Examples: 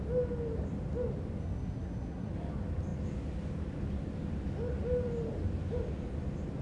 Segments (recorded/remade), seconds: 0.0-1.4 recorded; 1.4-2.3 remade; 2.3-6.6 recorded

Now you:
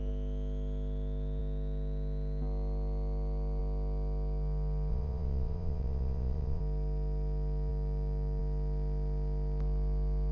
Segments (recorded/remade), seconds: 0.0-4.9 recorded; 4.9-6.6 remade; 6.6-10.3 recorded

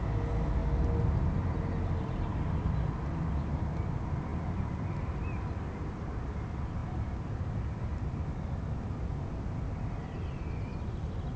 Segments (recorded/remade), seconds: 0.0-11.4 recorded

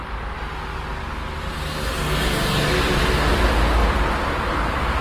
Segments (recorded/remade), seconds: 0.0-5.0 recorded

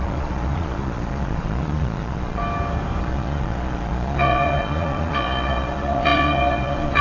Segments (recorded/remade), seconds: 0.0-2.4 remade; 2.4-3.0 recorded; 3.0-7.0 remade

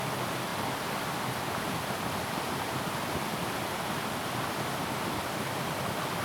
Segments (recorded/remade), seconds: 0.0-6.2 recorded